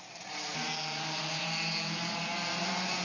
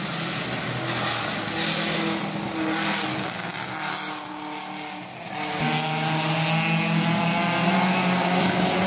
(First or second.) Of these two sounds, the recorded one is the second